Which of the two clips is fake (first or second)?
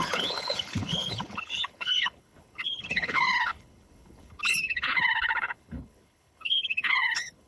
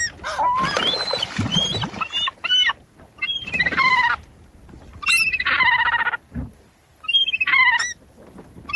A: first